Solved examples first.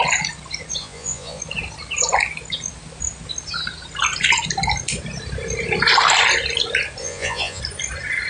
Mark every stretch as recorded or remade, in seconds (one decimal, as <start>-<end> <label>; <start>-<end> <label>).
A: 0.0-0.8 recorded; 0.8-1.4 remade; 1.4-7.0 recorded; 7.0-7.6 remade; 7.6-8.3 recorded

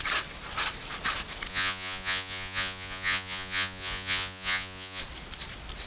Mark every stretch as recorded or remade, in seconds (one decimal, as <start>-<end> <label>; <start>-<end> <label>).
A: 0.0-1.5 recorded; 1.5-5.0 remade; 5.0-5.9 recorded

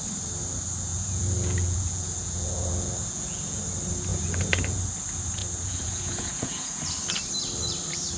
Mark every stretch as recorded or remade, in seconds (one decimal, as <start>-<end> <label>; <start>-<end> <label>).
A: 0.0-0.9 recorded; 0.9-3.6 remade; 3.6-4.1 recorded; 4.1-4.8 remade; 4.8-5.4 recorded; 5.4-6.8 remade; 6.8-8.2 recorded

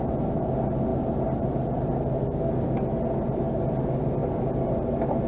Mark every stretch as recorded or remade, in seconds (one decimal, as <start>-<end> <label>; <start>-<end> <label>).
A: 0.0-5.3 recorded

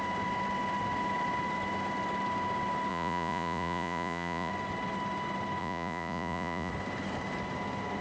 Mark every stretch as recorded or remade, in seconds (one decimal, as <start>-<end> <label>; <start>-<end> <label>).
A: 0.0-2.9 recorded; 2.9-4.5 remade; 4.5-5.6 recorded; 5.6-6.7 remade; 6.7-8.0 recorded

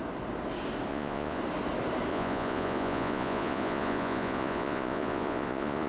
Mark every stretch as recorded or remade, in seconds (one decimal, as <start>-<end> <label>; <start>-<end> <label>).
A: 0.0-0.9 recorded; 0.9-1.4 remade; 1.4-2.1 recorded; 2.1-5.9 remade

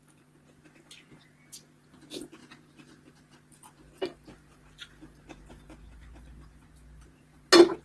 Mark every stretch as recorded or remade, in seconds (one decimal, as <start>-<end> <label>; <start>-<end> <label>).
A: 0.0-7.8 recorded